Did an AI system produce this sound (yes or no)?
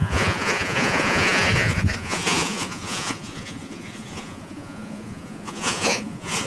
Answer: yes